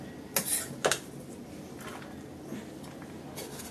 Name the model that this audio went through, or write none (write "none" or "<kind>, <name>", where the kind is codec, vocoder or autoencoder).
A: none